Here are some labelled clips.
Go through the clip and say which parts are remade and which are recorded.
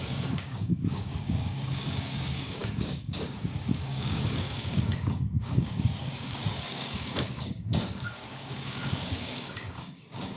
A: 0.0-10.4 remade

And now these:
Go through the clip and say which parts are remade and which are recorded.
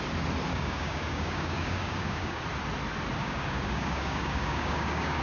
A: 0.0-0.5 recorded; 0.5-2.4 remade; 2.4-3.2 recorded; 3.2-5.2 remade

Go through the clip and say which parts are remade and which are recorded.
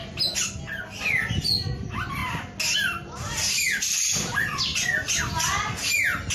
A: 0.0-6.3 recorded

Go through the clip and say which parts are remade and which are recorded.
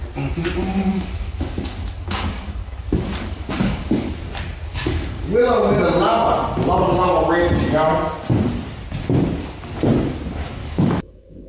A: 0.0-0.9 recorded; 0.9-4.1 remade; 4.1-4.7 recorded; 4.7-5.3 remade; 5.3-10.6 recorded; 10.6-11.5 remade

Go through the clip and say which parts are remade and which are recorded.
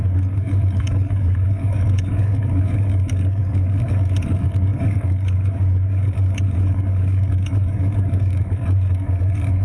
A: 0.0-9.6 remade